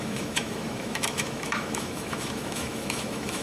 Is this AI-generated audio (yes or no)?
yes